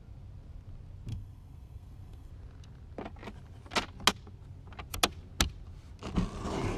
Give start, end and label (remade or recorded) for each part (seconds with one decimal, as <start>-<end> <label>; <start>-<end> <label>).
0.0-1.1 recorded; 1.1-2.3 remade; 2.3-6.8 recorded